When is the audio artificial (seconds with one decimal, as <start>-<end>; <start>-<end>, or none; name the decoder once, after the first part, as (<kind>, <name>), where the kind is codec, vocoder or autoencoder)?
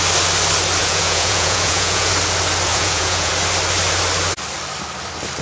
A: 0.8-2.1 (vocoder, Vocos); 2.7-3.3